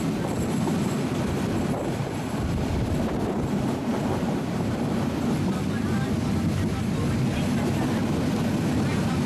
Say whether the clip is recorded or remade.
remade